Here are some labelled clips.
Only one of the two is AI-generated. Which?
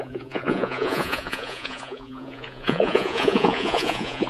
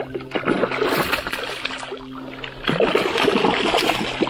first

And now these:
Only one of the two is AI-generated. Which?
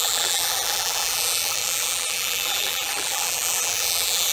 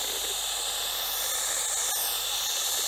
first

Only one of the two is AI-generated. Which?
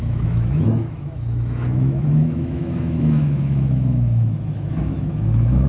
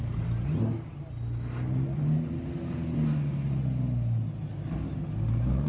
first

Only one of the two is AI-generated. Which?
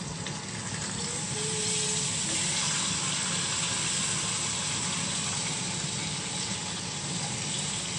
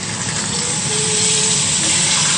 second